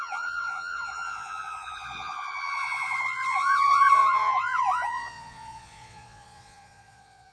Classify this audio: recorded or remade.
remade